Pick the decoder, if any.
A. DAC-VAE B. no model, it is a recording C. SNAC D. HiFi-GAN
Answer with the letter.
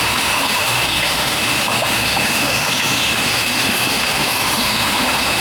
A